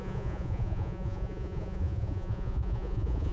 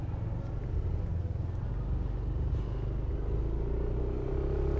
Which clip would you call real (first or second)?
second